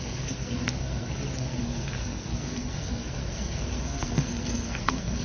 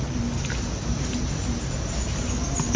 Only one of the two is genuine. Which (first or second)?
second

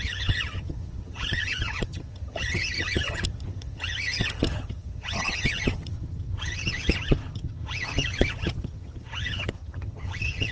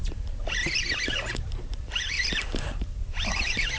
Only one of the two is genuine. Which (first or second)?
second